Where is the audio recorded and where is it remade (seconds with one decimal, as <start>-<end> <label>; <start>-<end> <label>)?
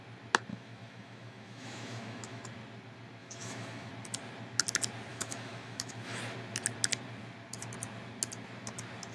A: 0.0-0.5 recorded; 0.5-2.4 remade; 2.4-3.2 recorded; 3.2-3.9 remade; 3.9-5.1 recorded; 5.1-6.2 remade; 6.2-9.1 recorded